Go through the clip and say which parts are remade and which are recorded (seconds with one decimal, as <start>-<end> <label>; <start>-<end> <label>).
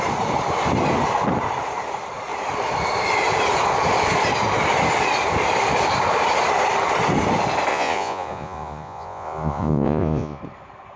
0.0-7.7 recorded; 7.7-10.4 remade; 10.4-11.0 recorded